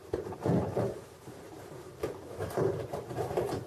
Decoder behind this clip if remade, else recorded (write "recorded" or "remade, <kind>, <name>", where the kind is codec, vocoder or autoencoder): remade, vocoder, BigVGAN v2